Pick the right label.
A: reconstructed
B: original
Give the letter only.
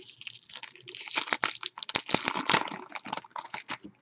B